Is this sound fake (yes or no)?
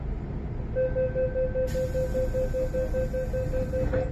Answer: no